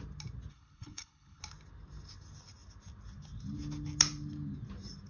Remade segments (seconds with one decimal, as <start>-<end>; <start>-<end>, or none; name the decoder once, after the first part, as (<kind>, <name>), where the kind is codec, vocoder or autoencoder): 0.5-1.4 (codec, HILCodec)